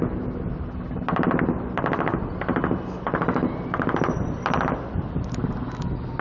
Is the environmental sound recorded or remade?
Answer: recorded